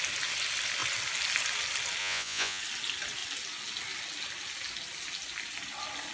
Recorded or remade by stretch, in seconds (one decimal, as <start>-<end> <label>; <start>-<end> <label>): 0.0-2.0 recorded; 2.0-2.6 remade; 2.6-6.1 recorded